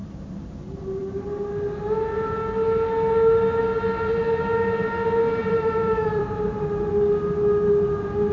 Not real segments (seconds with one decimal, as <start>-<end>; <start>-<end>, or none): 0.0-0.5; 5.4-6.9